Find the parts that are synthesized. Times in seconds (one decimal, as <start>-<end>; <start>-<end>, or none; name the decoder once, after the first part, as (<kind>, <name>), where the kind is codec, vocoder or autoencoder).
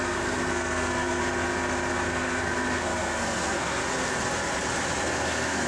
0.0-1.2 (codec, SNAC); 1.9-3.8; 5.0-5.7